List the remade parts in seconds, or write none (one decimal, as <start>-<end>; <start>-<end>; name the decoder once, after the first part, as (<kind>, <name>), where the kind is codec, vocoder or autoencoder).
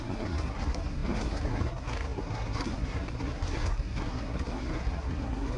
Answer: 0.0-5.6 (codec, SNAC)